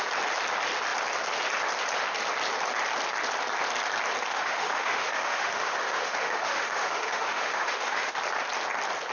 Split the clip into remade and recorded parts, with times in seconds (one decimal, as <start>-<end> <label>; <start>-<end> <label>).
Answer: 0.0-4.3 recorded; 4.3-8.1 remade; 8.1-9.1 recorded